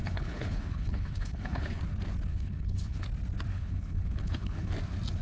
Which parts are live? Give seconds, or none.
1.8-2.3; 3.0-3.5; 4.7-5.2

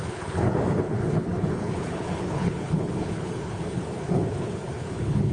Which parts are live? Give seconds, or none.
none

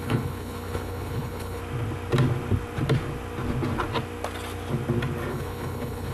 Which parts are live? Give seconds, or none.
1.6-5.3

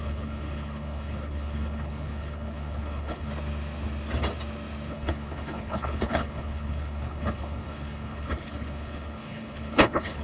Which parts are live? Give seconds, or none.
3.3-4.9